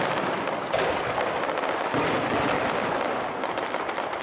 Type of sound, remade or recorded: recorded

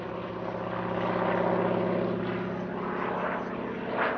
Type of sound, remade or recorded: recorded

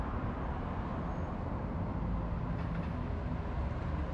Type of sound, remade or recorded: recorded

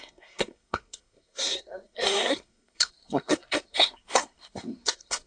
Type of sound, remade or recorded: remade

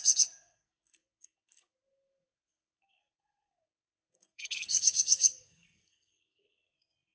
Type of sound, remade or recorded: remade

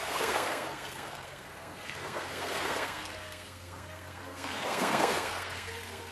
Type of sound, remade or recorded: remade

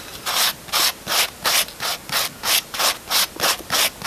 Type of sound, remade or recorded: recorded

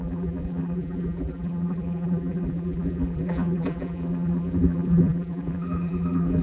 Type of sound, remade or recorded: remade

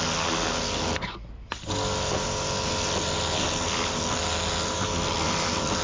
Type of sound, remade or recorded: recorded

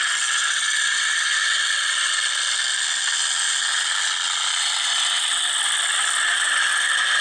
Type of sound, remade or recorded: recorded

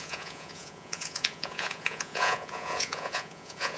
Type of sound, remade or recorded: remade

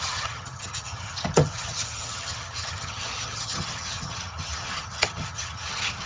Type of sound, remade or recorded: remade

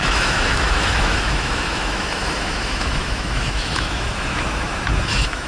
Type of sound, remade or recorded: remade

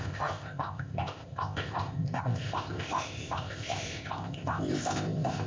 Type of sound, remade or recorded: remade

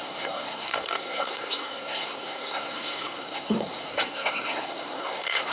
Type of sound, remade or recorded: remade